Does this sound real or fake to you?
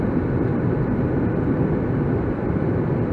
fake